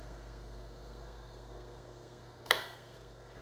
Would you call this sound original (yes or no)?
no